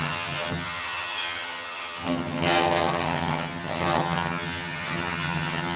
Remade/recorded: remade